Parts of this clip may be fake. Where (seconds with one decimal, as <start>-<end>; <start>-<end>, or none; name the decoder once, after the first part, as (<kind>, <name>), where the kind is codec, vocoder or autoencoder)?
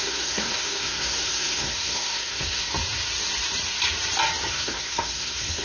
0.0-2.7 (codec, SNAC); 4.5-5.6